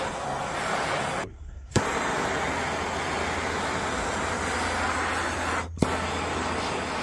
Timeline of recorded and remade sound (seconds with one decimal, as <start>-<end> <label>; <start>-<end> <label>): 0.0-1.3 recorded; 1.3-1.8 remade; 1.8-7.0 recorded